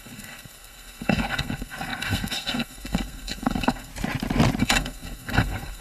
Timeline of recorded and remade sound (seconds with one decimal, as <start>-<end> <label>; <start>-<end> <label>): 0.0-3.9 remade; 3.9-4.6 recorded; 4.6-5.8 remade